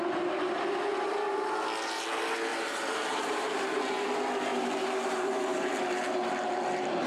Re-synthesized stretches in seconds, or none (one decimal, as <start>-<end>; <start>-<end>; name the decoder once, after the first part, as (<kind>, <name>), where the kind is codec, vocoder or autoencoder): 0.9-1.5 (vocoder, BigVGAN v2); 2.5-3.8; 4.5-7.1